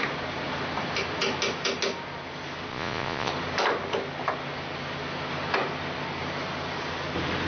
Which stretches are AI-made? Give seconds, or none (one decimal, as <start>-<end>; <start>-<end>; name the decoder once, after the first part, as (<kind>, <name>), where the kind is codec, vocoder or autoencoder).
2.7-3.3 (vocoder, Vocos)